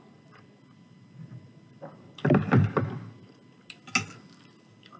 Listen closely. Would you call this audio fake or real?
real